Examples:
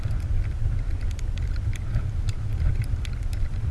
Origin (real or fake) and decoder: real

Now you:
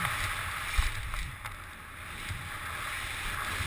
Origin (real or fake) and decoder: real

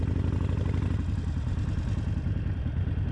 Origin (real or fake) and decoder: real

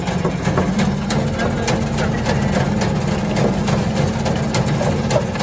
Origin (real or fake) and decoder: real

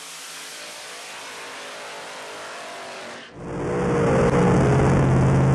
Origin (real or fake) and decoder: real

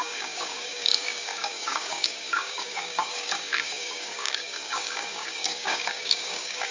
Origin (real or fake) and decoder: fake, codec, DAC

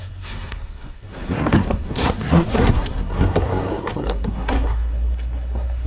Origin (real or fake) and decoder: fake, codec, SNAC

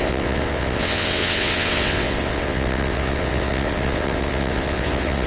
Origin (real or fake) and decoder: fake, vocoder, WaveNeXt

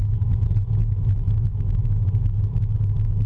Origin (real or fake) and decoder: fake, autoencoder, DAC-VAE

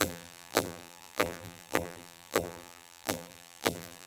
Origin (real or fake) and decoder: fake, vocoder, BigVGAN v2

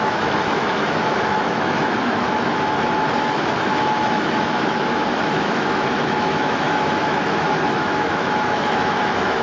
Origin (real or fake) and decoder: fake, autoencoder, DAC-VAE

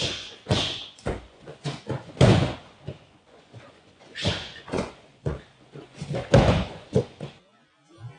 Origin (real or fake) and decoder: fake, vocoder, Vocos